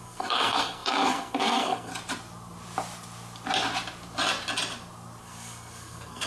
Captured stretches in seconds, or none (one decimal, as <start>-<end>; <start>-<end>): 1.9-5.2